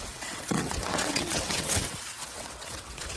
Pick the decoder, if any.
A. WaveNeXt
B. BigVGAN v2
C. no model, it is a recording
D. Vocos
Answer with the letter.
A